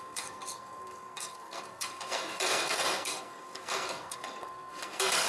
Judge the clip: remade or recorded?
remade